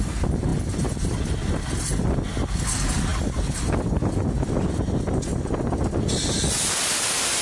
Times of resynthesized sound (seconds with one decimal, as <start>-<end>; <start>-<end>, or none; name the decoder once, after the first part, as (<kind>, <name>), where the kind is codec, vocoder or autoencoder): none